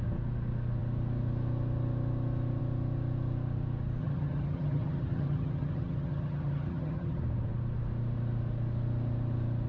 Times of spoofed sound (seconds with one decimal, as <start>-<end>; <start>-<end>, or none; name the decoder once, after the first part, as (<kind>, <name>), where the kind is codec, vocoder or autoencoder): 4.0-7.2 (vocoder, HiFi-GAN)